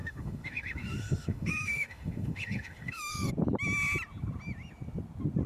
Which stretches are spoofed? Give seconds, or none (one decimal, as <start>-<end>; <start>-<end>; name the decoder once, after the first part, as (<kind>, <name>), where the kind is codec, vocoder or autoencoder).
0.0-3.3 (autoencoder, DAC-VAE)